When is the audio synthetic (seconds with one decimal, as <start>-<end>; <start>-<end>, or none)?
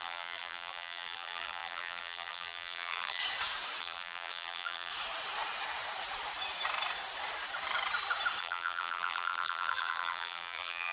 0.0-3.2; 3.8-4.9; 8.4-10.9